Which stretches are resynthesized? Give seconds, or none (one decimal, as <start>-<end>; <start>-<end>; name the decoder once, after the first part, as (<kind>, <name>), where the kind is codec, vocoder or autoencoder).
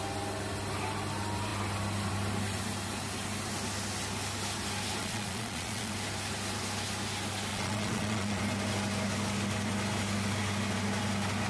5.0-5.9 (vocoder, Vocos); 7.5-8.4